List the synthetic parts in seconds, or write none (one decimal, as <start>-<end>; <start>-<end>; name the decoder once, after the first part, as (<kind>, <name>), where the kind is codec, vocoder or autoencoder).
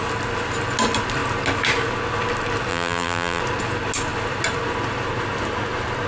2.7-3.4 (vocoder, BigVGAN v2)